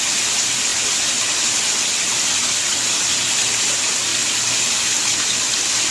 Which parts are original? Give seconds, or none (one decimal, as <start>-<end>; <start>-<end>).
0.0-5.9